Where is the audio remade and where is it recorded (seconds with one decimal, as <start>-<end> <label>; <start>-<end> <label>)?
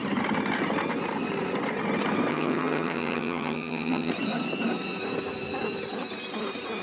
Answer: 0.0-2.3 recorded; 2.3-4.1 remade; 4.1-6.8 recorded